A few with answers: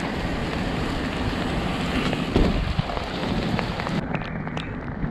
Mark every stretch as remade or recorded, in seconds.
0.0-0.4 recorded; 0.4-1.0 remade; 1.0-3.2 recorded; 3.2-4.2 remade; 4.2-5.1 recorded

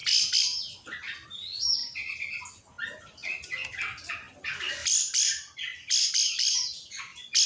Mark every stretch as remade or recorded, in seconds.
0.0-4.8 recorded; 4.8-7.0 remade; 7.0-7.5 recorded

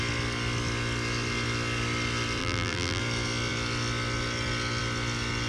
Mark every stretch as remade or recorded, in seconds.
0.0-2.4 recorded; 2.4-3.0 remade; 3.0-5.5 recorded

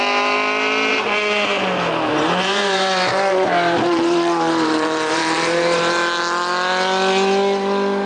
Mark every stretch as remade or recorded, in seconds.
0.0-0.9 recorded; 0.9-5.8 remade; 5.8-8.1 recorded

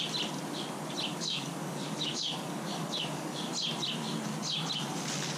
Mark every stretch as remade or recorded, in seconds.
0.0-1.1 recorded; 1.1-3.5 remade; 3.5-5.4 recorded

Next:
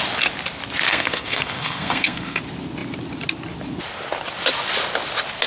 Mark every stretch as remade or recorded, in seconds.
0.0-0.9 recorded; 0.9-2.4 remade; 2.4-5.5 recorded

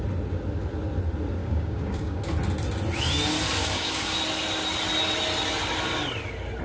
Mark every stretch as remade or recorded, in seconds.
0.0-1.4 recorded; 1.4-2.2 remade; 2.2-3.6 recorded; 3.6-4.2 remade; 4.2-6.6 recorded

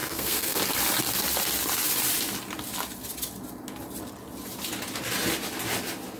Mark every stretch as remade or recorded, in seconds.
0.0-0.6 remade; 0.6-6.2 recorded